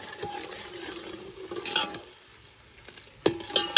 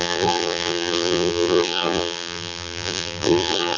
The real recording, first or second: first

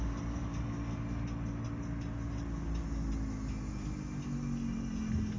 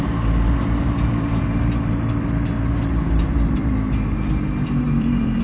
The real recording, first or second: first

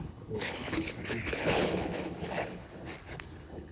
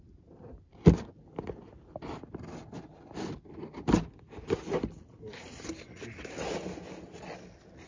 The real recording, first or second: second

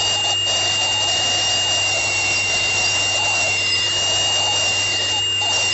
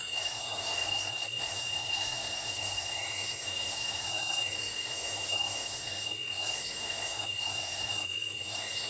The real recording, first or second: first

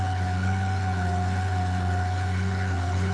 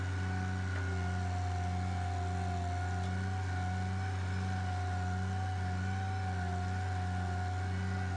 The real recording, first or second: second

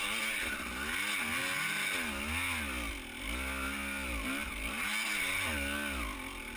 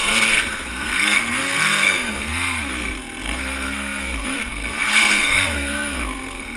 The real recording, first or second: first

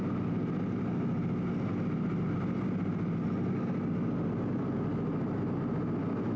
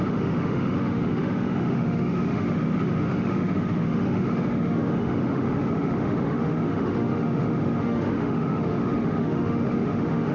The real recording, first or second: first